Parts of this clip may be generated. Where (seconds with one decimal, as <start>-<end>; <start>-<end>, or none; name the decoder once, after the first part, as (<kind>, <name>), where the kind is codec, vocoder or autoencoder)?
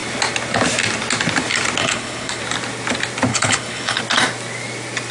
1.8-2.4 (codec, HILCodec); 3.3-4.0